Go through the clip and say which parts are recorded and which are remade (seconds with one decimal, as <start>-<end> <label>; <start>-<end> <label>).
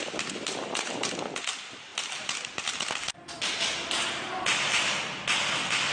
0.0-5.9 recorded